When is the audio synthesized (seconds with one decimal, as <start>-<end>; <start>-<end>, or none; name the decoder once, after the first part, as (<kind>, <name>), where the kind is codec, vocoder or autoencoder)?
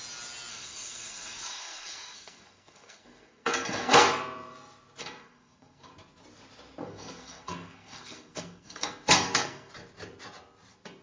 0.5-4.1 (codec, SNAC); 5.0-5.9; 6.8-9.7